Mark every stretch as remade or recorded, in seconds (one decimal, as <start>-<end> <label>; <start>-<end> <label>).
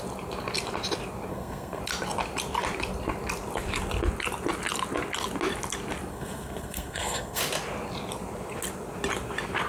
0.0-1.3 recorded; 1.3-1.8 remade; 1.8-6.1 recorded; 6.1-7.4 remade; 7.4-9.7 recorded